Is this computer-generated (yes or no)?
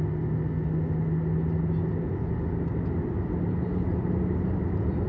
no